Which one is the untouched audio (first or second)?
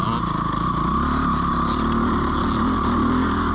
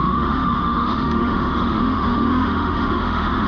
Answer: first